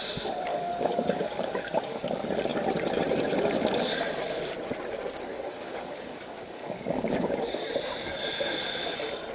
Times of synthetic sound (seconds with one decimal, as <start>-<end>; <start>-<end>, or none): 0.5-2.0; 5.3-7.7